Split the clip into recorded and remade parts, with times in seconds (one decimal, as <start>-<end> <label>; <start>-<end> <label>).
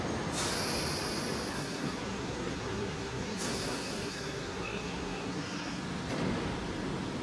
0.0-1.5 recorded; 1.5-5.8 remade; 5.8-7.2 recorded